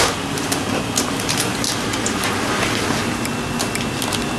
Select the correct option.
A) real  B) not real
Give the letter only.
A